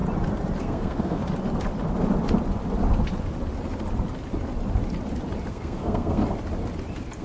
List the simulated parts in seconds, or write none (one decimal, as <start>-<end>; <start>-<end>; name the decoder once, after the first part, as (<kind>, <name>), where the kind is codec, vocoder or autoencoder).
0.6-1.2 (codec, SNAC); 5.5-6.2